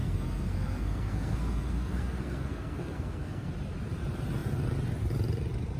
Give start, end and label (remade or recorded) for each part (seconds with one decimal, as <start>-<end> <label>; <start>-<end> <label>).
0.0-3.5 remade; 3.5-5.8 recorded